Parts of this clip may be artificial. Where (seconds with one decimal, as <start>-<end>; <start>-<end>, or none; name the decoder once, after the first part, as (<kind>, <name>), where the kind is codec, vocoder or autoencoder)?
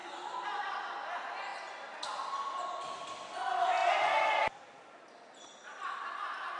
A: none